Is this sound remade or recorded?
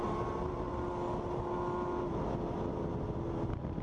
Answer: recorded